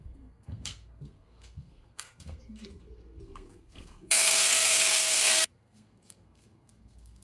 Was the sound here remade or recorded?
remade